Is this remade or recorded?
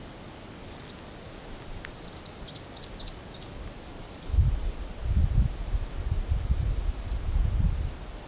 recorded